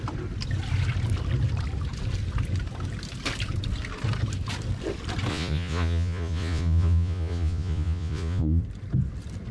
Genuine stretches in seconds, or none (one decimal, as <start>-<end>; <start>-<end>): 0.0-5.3; 8.6-9.5